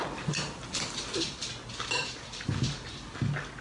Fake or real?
real